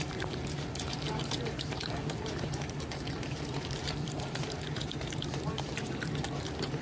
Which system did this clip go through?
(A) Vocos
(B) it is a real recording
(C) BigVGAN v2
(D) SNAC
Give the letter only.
C